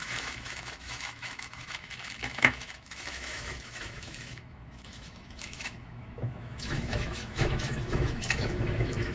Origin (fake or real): fake